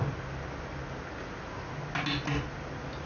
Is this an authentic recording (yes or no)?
yes